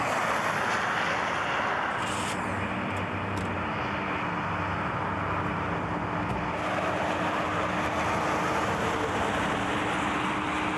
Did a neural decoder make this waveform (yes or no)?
no